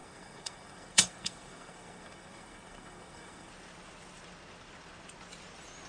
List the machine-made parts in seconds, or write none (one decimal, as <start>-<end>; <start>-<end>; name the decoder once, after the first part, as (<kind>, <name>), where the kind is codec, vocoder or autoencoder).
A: 0.0-3.5 (codec, SNAC)